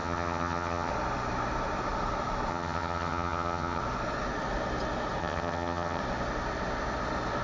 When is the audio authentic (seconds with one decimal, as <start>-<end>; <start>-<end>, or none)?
0.9-2.5; 3.8-5.2; 6.0-7.4